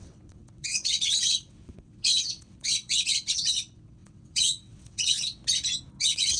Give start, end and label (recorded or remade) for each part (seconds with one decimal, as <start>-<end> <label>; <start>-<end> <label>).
0.0-5.4 remade; 5.4-6.0 recorded; 6.0-6.4 remade